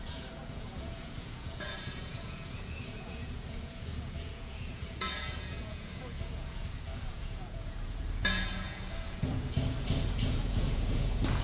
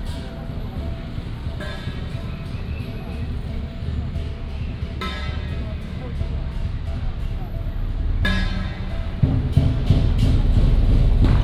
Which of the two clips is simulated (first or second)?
first